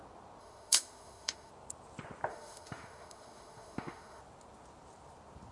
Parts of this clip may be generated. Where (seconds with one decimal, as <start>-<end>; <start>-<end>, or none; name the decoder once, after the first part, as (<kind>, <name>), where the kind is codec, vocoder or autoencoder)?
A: 0.4-1.5 (autoencoder, DAC-VAE); 2.3-4.2